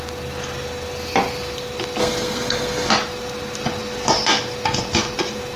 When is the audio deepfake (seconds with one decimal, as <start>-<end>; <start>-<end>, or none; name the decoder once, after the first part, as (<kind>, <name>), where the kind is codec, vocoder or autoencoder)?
2.0-2.9 (codec, SNAC)